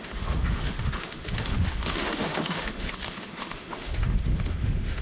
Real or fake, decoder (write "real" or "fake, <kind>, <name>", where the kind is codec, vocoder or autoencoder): fake, autoencoder, DAC-VAE